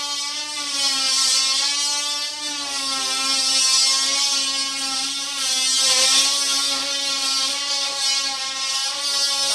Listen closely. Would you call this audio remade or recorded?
recorded